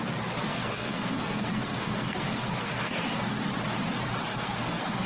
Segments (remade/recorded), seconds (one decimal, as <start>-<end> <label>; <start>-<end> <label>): 0.0-0.5 recorded; 0.5-3.3 remade; 3.3-4.3 recorded; 4.3-5.1 remade